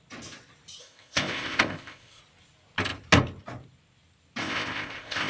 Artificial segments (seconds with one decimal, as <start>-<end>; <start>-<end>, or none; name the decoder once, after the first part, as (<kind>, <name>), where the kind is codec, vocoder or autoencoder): 0.8-2.2 (codec, ZipCodec); 4.4-5.3